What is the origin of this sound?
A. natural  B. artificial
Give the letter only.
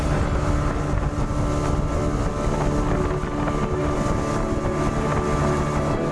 A